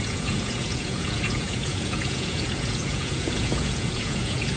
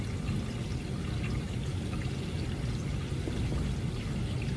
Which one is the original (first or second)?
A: second